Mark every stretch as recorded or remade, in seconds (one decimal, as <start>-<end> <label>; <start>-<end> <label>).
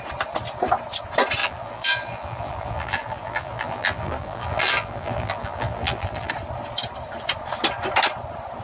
0.0-1.4 recorded; 1.4-6.3 remade; 6.3-8.6 recorded